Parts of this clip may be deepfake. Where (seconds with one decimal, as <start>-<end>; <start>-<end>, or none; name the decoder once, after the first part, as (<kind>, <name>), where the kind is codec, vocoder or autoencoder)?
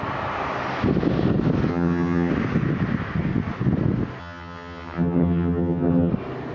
1.7-2.3 (vocoder, HiFi-GAN); 4.2-6.1